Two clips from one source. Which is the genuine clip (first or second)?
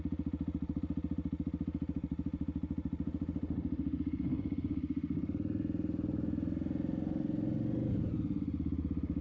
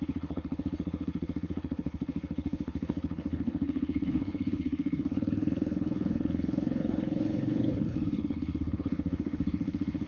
first